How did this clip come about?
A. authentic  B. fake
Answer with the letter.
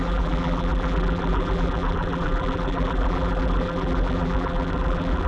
B